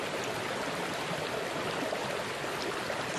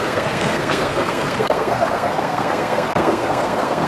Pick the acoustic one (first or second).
first